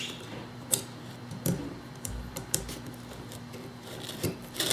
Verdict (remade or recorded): remade